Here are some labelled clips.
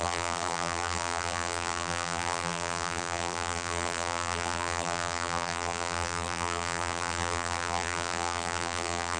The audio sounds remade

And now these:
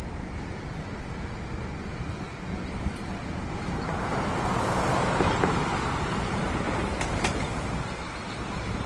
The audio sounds remade